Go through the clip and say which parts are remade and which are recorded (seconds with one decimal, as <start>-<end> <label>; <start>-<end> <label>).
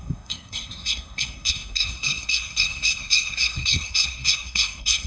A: 0.0-5.1 remade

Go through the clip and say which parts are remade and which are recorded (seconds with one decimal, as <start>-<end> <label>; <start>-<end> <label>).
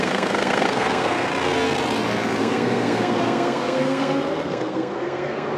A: 0.0-1.3 remade; 1.3-2.4 recorded; 2.4-5.6 remade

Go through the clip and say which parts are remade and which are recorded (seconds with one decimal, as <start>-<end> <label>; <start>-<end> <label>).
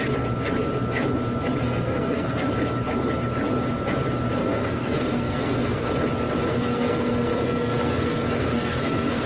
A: 0.0-1.6 recorded; 1.6-2.5 remade; 2.5-4.4 recorded; 4.4-5.9 remade; 5.9-6.5 recorded; 6.5-9.3 remade